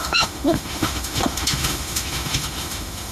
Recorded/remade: remade